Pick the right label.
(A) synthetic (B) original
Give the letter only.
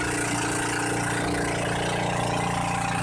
B